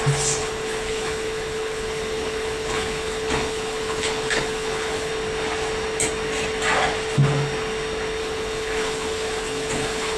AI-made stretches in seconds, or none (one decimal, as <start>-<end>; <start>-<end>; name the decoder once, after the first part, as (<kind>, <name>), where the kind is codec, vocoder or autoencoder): 0.4-5.1 (codec, HILCodec); 8.2-10.2